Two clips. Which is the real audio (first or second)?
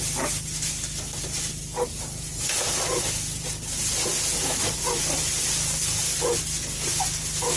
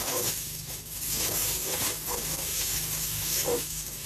first